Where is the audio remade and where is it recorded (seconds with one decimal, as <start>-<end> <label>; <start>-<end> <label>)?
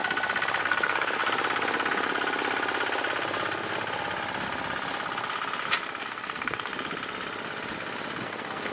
0.0-0.6 recorded; 0.6-1.2 remade; 1.2-6.0 recorded; 6.0-6.7 remade; 6.7-8.2 recorded; 8.2-8.7 remade